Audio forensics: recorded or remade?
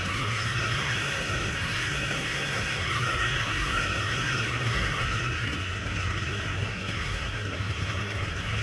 remade